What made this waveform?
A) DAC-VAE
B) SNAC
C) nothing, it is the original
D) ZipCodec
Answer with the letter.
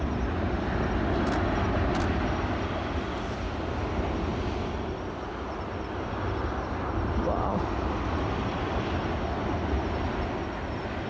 C